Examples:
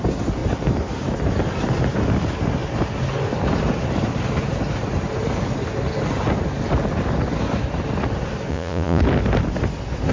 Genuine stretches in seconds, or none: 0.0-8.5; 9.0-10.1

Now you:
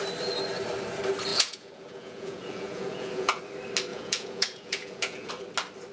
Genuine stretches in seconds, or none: 0.0-1.3; 3.4-3.9; 5.3-5.9

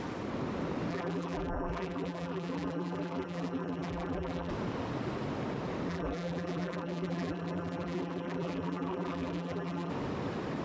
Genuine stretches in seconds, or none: 0.0-0.9; 4.5-5.9; 9.9-10.6

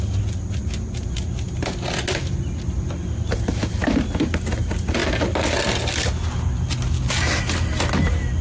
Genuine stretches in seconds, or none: 0.0-8.4